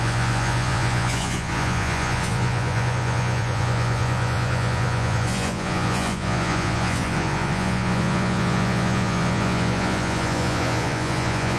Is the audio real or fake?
fake